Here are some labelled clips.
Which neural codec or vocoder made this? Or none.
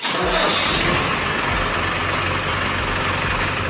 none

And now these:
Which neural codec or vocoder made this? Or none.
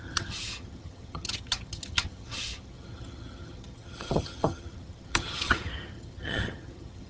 vocoder, HiFi-GAN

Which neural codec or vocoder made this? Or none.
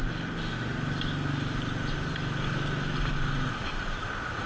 none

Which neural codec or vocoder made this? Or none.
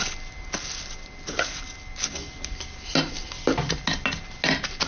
none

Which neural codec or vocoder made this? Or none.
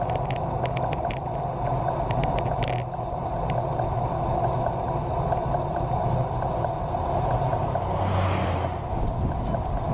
none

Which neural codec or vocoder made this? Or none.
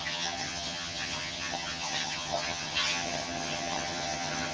vocoder, HiFi-GAN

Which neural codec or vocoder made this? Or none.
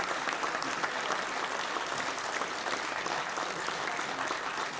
none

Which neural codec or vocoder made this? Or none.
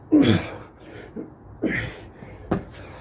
none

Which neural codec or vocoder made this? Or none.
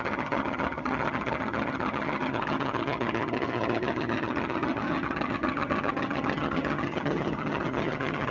vocoder, HiFi-GAN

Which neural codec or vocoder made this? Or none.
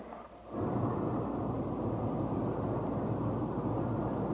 none